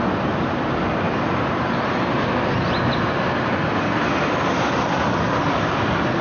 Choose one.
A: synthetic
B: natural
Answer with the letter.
B